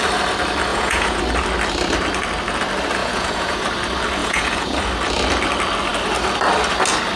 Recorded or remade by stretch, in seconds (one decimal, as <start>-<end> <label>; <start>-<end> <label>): 0.0-0.7 recorded; 0.7-1.2 remade; 1.2-3.0 recorded; 3.0-3.6 remade; 3.6-4.2 recorded; 4.2-4.8 remade; 4.8-7.2 recorded